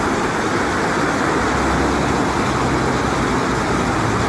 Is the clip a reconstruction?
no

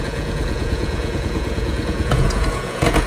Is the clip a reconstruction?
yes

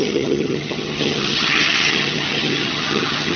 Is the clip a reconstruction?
yes